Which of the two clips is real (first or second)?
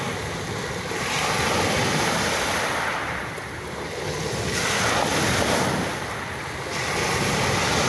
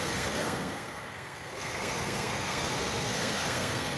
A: first